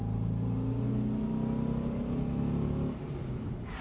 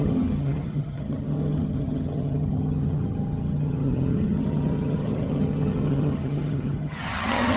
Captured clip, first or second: first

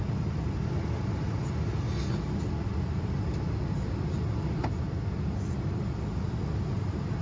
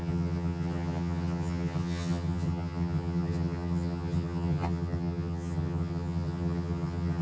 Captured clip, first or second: first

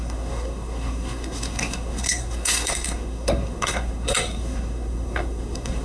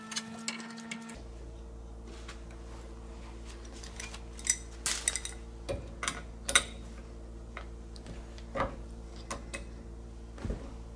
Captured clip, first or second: second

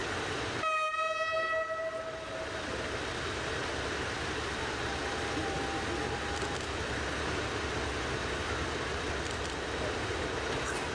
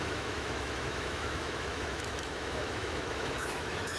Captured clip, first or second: first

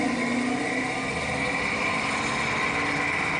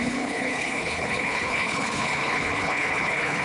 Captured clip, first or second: first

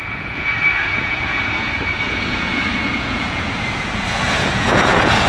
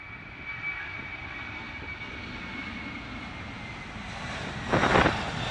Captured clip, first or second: second